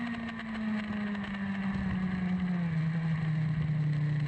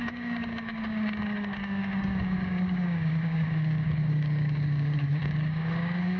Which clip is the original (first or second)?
first